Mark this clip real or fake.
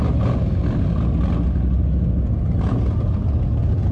real